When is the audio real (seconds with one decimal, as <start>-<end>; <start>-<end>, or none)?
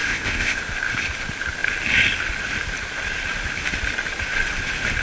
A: 0.6-5.0